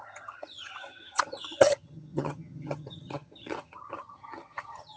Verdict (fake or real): fake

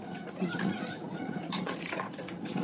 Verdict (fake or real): fake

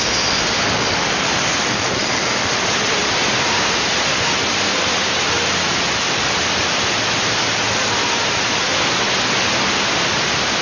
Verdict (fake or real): real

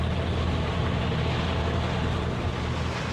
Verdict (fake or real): real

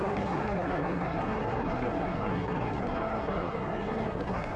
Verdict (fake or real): fake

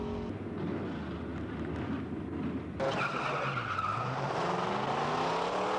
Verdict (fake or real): real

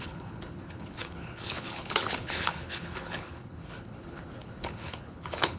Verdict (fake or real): fake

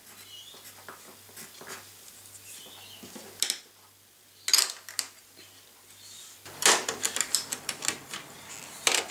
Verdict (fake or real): real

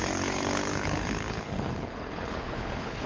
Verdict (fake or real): fake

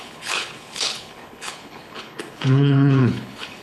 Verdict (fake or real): fake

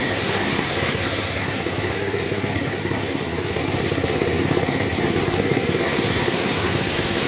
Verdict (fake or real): fake